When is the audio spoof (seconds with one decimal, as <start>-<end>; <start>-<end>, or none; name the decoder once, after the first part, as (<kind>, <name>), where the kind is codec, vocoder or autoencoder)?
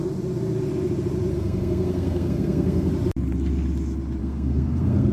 1.3-2.9 (codec, SNAC); 4.2-5.1